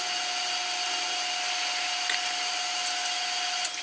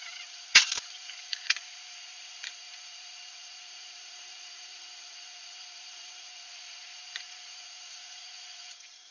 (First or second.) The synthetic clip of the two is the second